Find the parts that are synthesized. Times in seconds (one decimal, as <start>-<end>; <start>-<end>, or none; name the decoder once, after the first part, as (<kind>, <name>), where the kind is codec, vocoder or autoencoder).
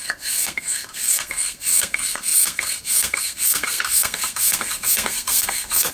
0.0-5.9 (codec, SNAC)